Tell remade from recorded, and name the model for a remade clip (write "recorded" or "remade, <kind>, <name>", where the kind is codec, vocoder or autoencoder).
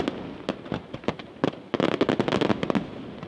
recorded